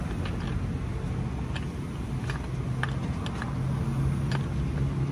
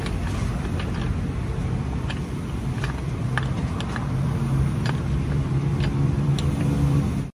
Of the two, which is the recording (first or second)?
first